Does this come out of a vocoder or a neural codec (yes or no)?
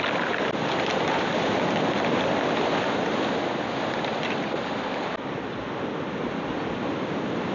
no